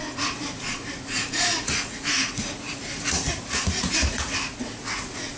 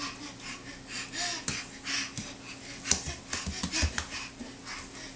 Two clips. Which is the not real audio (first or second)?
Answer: first